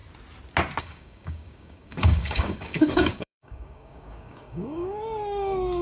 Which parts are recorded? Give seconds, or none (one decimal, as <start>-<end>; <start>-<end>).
0.0-0.8